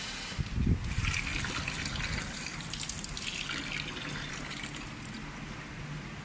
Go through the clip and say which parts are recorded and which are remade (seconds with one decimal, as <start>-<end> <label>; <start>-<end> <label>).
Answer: 0.0-6.2 recorded